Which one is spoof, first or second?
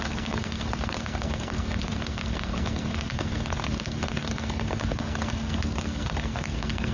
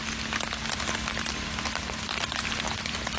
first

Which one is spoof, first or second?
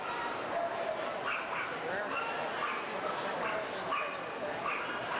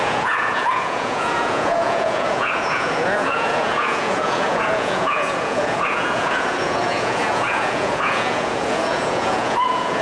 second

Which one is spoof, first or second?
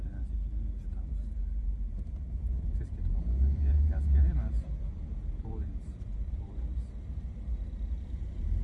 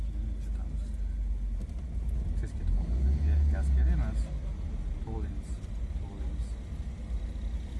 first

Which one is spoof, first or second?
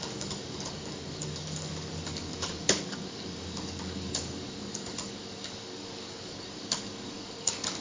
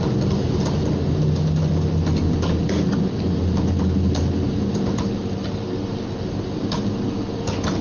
first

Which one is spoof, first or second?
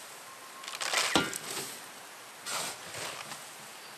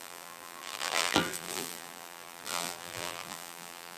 second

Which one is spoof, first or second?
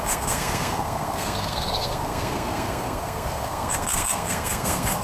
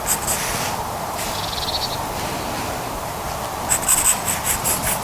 first